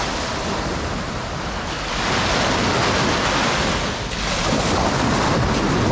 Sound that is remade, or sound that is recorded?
recorded